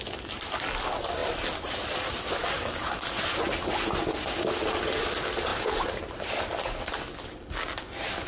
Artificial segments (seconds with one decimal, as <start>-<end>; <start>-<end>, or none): 5.5-6.4